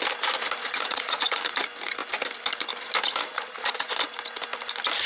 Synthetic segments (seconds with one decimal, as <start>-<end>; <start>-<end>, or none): 0.6-1.4; 3.3-3.9